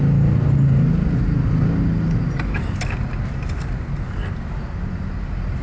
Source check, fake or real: real